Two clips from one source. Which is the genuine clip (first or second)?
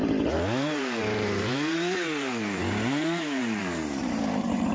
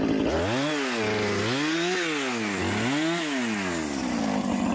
second